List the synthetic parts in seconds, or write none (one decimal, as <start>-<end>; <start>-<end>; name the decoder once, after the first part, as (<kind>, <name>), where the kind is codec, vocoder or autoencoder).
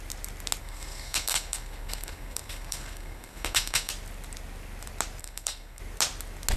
0.6-3.9 (codec, SNAC); 5.2-5.8